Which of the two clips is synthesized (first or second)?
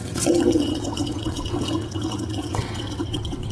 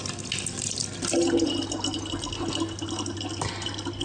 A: first